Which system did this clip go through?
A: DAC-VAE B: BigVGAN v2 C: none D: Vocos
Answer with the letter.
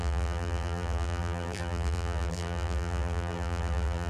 B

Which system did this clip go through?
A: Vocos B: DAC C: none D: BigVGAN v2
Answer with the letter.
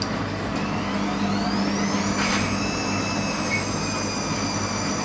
C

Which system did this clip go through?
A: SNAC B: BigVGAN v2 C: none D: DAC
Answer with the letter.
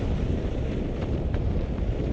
B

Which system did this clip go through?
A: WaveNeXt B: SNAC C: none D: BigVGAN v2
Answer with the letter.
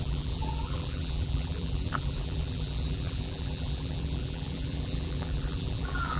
D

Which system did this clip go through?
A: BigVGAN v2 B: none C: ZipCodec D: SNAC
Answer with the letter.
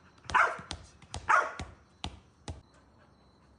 A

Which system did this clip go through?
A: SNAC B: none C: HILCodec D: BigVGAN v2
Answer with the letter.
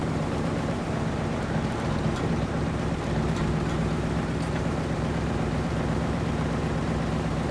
D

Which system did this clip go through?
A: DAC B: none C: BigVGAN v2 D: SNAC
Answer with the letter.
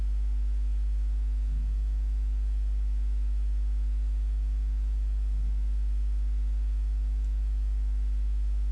B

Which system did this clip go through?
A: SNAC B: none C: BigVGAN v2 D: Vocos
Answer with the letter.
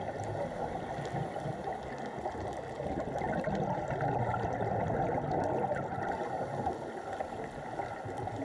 B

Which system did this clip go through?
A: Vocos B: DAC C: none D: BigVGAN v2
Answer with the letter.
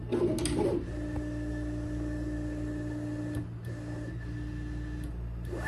C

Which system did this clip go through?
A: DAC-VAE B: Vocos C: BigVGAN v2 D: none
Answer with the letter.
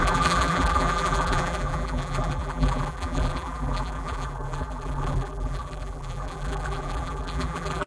C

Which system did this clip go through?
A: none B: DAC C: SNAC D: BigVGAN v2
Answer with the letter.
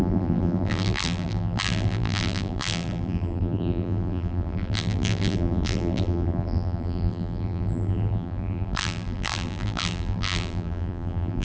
D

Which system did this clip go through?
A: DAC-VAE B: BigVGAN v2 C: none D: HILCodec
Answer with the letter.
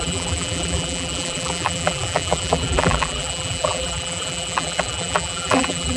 B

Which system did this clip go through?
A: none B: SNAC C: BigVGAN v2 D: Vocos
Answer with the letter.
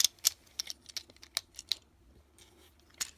A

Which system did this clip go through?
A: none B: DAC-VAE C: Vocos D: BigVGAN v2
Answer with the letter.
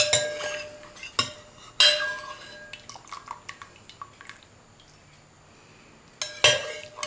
A